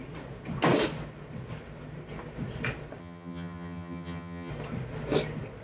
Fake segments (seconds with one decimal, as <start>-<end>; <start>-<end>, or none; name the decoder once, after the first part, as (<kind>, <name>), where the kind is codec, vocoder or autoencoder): 3.0-4.5 (vocoder, HiFi-GAN)